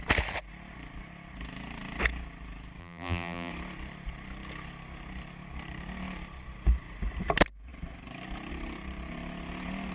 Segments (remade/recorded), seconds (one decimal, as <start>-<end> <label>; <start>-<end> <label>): 0.0-2.8 recorded; 2.8-3.5 remade; 3.5-9.9 recorded

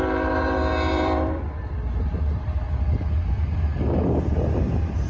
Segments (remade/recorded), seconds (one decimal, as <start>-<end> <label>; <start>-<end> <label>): 0.0-0.9 recorded; 0.9-4.0 remade; 4.0-5.1 recorded